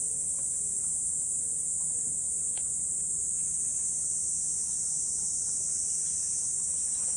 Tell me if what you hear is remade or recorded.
recorded